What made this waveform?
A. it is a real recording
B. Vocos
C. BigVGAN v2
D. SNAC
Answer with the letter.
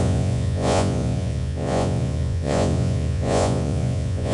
B